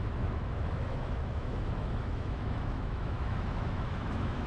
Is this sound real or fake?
fake